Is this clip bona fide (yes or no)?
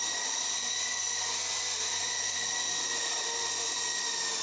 yes